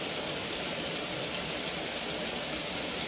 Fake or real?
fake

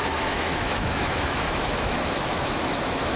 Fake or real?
fake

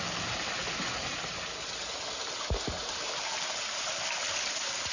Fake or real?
real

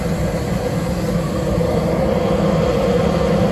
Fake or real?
real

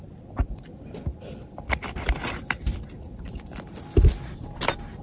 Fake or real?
real